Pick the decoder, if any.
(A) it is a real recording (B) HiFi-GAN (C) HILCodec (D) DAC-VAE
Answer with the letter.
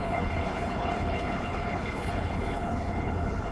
C